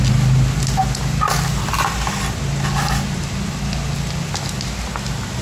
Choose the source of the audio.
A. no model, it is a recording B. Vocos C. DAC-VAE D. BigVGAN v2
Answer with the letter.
A